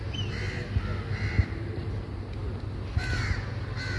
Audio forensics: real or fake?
real